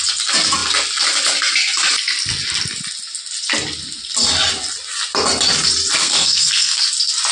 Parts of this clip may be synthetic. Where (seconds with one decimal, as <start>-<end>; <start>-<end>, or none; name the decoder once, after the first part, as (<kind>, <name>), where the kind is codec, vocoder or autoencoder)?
6.0-6.8 (codec, SNAC)